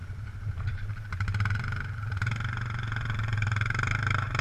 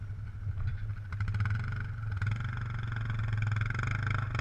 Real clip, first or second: second